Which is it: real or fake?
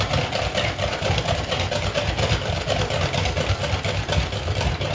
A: real